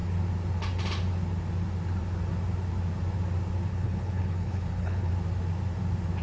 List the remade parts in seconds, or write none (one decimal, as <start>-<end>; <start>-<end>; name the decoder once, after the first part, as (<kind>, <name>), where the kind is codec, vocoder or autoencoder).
3.7-5.1 (codec, HILCodec)